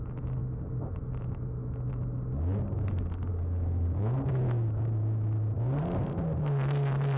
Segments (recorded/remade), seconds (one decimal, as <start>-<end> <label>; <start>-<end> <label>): 0.0-3.3 recorded; 3.3-4.3 remade; 4.3-7.2 recorded

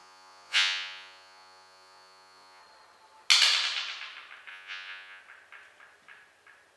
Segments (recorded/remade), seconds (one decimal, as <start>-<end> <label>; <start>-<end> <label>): 0.0-2.6 remade; 2.6-4.5 recorded; 4.5-5.2 remade; 5.2-6.8 recorded

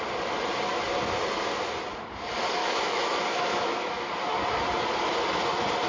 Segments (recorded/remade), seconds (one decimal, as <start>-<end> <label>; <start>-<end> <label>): 0.0-2.6 recorded; 2.6-4.1 remade; 4.1-5.9 recorded

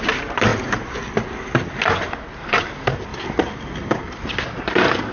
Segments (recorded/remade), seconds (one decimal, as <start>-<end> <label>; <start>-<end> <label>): 0.0-0.5 remade; 0.5-2.5 recorded; 2.5-3.1 remade; 3.1-4.6 recorded; 4.6-5.1 remade

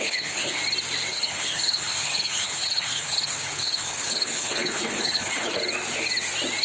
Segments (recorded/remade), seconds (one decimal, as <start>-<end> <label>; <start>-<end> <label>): 0.0-0.6 remade; 0.6-1.1 recorded; 1.1-5.6 remade; 5.6-6.6 recorded